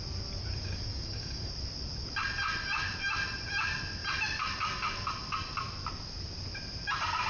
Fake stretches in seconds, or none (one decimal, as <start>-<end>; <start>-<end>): 0.4-1.5